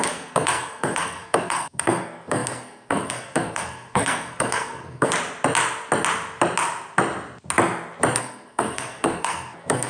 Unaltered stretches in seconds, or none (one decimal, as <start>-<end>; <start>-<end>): 5.1-8.2